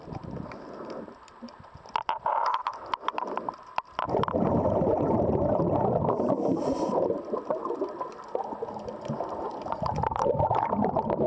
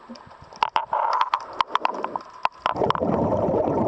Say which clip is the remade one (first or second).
first